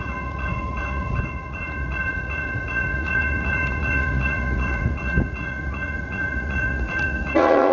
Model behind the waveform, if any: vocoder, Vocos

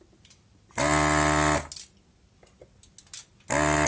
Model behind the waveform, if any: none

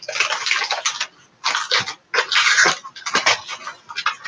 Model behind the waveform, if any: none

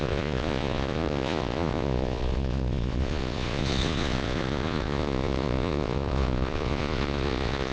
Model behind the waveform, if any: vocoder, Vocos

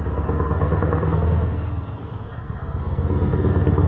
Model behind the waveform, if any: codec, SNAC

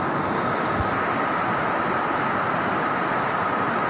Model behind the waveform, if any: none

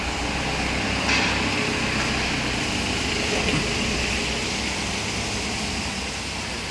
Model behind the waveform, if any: none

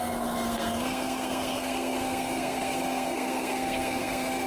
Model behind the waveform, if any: codec, SNAC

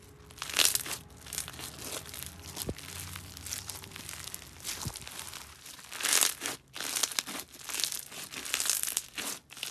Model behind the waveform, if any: none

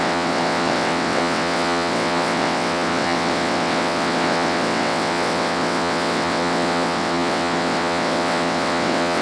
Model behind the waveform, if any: vocoder, WaveNeXt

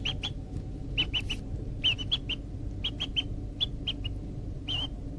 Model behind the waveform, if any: none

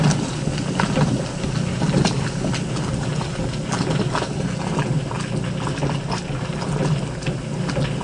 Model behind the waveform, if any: none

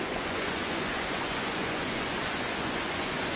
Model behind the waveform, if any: vocoder, Vocos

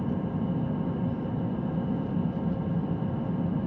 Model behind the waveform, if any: none